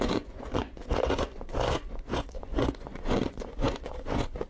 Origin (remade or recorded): remade